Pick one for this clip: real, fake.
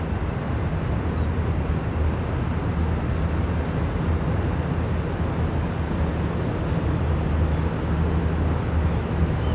real